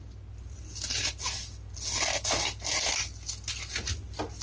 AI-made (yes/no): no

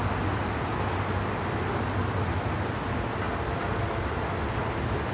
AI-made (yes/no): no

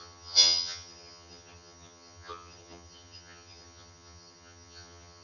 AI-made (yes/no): yes